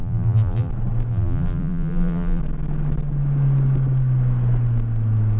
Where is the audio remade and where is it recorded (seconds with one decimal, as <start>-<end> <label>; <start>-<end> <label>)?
0.0-0.7 remade; 0.7-1.1 recorded; 1.1-2.4 remade; 2.4-5.4 recorded